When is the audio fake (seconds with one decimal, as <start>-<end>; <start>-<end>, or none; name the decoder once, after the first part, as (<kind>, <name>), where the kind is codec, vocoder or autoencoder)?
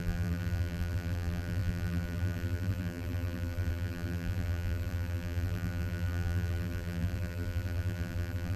0.0-8.6 (vocoder, BigVGAN v2)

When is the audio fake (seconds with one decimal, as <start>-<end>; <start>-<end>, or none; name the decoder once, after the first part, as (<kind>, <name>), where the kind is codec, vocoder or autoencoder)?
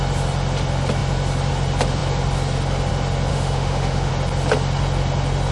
3.3-4.1 (autoencoder, DAC-VAE)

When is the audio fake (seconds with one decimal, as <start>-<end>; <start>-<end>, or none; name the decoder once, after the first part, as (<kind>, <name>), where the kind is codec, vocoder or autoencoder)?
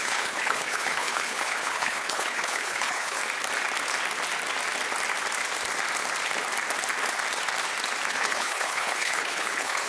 0.0-3.2 (codec, HILCodec); 8.1-9.9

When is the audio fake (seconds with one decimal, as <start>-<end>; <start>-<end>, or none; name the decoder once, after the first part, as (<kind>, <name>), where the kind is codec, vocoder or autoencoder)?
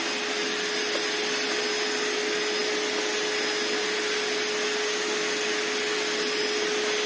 none